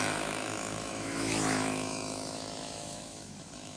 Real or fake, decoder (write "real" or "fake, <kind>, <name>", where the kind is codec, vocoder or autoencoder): fake, autoencoder, DAC-VAE